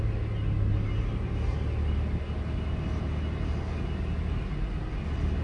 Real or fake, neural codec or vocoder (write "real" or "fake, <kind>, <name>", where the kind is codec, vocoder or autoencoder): real